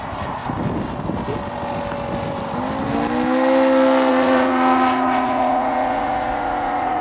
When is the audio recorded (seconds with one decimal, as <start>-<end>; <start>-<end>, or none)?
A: 0.4-4.1